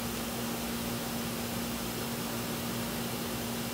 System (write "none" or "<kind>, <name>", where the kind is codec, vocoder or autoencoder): none